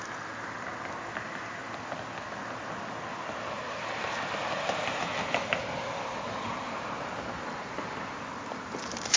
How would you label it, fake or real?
real